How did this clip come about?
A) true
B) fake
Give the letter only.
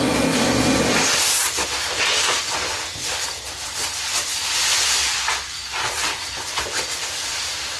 A